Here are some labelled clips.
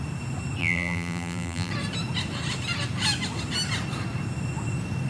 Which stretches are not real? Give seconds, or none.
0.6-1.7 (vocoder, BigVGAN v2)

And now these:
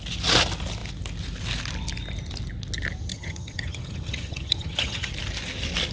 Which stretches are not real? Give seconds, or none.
3.1-5.1 (vocoder, HiFi-GAN)

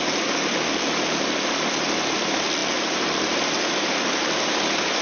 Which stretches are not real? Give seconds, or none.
none

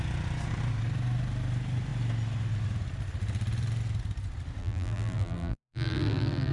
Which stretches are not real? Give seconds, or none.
4.6-6.5 (vocoder, BigVGAN v2)

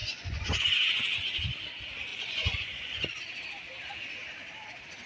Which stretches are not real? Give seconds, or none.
0.0-0.6 (vocoder, Vocos); 2.1-3.2